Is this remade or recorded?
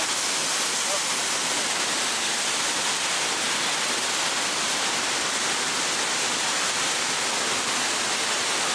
recorded